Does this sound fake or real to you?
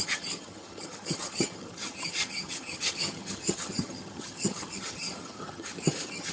fake